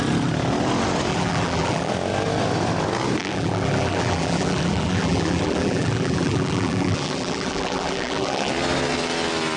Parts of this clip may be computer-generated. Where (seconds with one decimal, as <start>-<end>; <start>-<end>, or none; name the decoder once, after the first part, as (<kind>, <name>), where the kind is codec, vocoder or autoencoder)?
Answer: 1.1-1.9 (vocoder, BigVGAN v2); 3.2-8.5

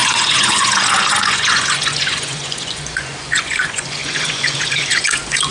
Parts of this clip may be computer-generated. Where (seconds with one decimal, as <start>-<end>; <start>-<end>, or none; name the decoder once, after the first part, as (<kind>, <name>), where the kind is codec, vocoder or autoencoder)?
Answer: 0.0-5.5 (vocoder, Vocos)

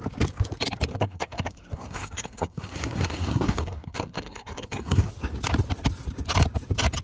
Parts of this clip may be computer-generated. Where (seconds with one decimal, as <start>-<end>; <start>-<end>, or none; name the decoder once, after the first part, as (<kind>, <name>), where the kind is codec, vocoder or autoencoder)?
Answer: 0.9-5.1 (codec, SNAC)

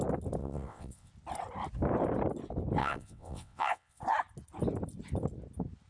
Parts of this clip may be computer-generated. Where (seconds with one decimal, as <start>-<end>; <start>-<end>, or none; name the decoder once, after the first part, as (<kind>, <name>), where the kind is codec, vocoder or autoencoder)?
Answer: 0.4-1.1 (vocoder, WaveNeXt); 2.8-4.0

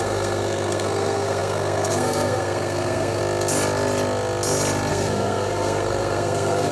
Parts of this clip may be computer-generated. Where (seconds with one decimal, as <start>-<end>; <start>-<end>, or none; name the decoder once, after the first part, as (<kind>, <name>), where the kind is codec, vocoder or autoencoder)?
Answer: 0.0-3.2 (codec, SNAC); 4.9-6.7

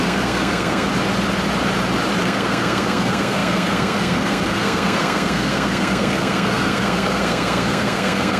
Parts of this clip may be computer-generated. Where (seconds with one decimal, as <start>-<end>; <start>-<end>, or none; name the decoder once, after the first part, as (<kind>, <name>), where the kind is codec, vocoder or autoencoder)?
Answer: 0.0-0.9 (codec, SNAC); 2.2-8.4

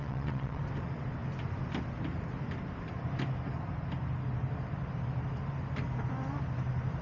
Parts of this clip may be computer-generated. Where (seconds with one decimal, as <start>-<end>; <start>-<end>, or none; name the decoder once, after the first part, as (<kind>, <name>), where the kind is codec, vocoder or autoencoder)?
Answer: 0.0-0.6 (vocoder, WaveNeXt)